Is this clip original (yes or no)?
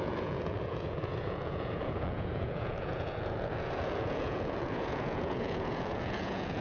no